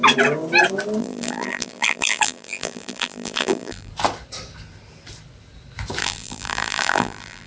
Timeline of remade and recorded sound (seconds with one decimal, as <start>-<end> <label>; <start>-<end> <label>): 0.0-1.0 recorded; 1.0-3.9 remade; 3.9-6.0 recorded; 6.0-7.5 remade